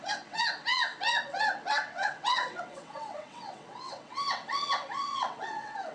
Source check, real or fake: fake